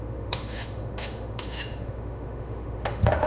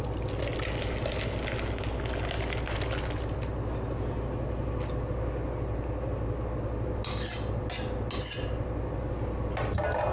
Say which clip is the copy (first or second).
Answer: first